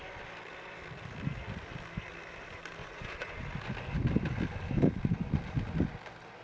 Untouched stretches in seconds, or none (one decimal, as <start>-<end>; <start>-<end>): 0.0-2.8; 3.4-6.4

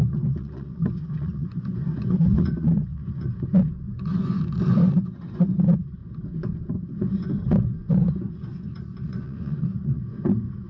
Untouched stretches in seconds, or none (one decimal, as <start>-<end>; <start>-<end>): 6.0-6.7

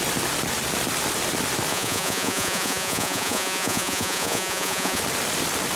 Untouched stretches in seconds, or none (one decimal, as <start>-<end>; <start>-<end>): 0.0-1.7; 5.0-5.8